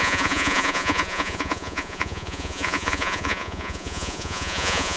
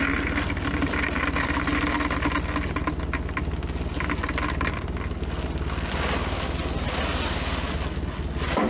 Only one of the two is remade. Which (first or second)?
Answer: first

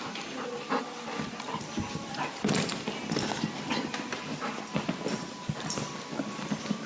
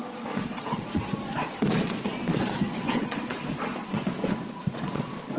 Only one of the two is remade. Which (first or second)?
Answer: second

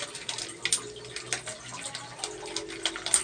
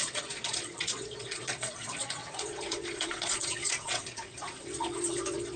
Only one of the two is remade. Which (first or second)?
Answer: second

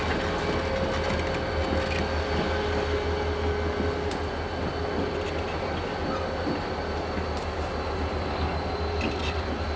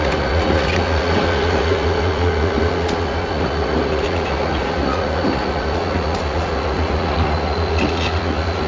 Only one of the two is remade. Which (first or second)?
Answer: second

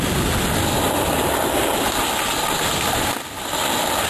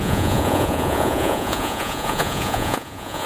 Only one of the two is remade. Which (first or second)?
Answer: second